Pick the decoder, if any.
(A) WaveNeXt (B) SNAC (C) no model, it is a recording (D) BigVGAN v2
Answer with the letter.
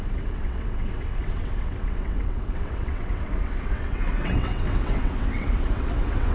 A